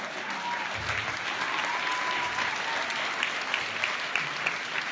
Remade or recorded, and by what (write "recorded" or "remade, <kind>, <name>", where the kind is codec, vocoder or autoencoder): recorded